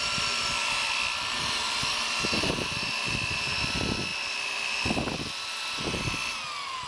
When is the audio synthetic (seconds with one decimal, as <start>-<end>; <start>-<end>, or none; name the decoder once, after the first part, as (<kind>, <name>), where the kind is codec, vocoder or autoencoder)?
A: 0.6-1.9 (vocoder, BigVGAN v2); 4.1-5.6